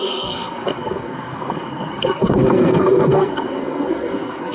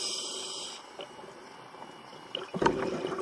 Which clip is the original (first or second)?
second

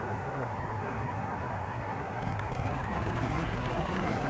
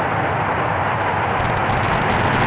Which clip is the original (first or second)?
second